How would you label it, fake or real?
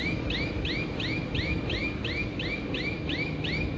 real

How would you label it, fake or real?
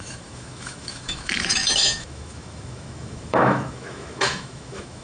fake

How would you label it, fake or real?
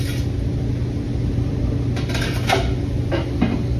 real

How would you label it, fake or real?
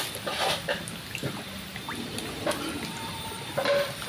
real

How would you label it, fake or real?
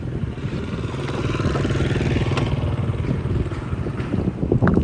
real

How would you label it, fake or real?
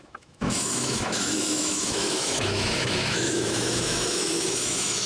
fake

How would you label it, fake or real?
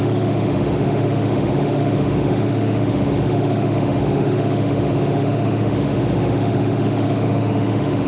fake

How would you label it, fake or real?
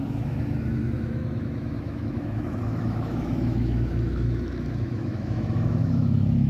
fake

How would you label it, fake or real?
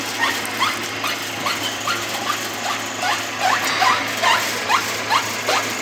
real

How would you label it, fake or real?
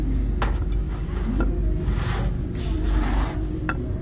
real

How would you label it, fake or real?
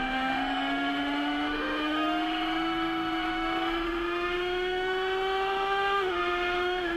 fake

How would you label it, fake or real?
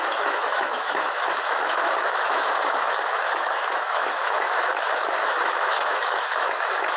fake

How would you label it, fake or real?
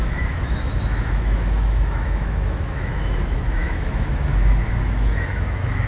fake